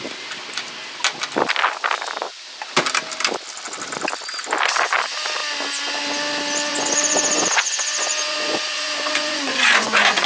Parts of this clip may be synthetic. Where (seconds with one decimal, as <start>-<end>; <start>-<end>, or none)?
6.7-10.3